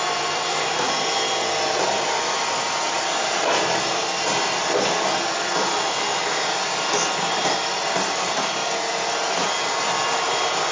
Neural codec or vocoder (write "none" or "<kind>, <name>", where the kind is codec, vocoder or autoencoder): vocoder, BigVGAN v2